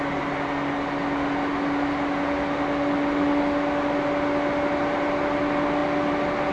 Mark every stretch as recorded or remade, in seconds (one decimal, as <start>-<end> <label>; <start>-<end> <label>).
0.0-6.5 recorded